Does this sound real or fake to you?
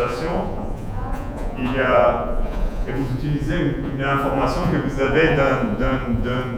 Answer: fake